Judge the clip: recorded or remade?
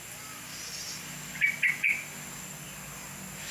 recorded